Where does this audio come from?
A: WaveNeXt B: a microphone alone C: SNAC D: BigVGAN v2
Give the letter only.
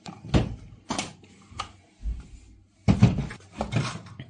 D